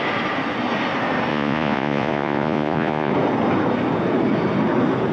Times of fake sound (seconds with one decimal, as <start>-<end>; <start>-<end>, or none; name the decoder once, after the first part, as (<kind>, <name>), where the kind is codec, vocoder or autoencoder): 1.3-3.1 (vocoder, Vocos)